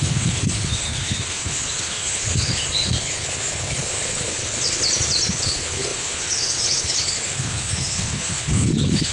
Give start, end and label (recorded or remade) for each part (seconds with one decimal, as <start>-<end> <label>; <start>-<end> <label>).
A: 0.0-4.8 remade; 4.8-5.3 recorded; 5.3-9.1 remade

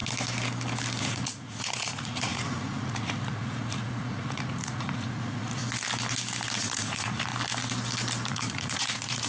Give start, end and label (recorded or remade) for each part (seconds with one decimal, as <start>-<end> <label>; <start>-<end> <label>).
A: 0.0-1.0 recorded; 1.0-5.6 remade; 5.6-6.6 recorded; 6.6-7.3 remade; 7.3-8.3 recorded; 8.3-9.3 remade

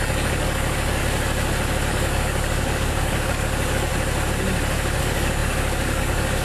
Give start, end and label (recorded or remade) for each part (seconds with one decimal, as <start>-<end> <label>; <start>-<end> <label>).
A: 0.0-1.0 remade; 1.0-1.9 recorded; 1.9-3.9 remade; 3.9-5.0 recorded; 5.0-6.4 remade

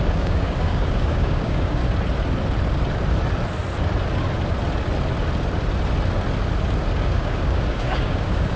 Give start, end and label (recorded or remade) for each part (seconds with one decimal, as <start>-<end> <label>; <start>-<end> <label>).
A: 0.0-1.8 remade; 1.8-7.0 recorded; 7.0-8.6 remade

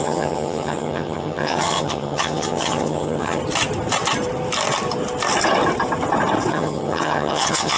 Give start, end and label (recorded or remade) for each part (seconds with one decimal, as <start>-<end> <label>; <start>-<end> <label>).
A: 0.0-3.4 remade; 3.4-6.5 recorded; 6.5-7.8 remade

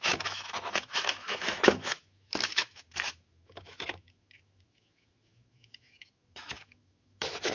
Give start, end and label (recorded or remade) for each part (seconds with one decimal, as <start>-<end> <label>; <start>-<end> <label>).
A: 0.0-7.5 remade

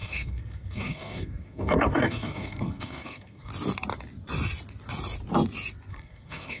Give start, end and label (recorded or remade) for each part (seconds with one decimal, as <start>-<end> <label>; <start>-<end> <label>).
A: 0.0-3.5 remade; 3.5-5.9 recorded; 5.9-6.6 remade